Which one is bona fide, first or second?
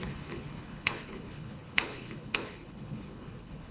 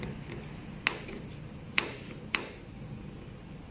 second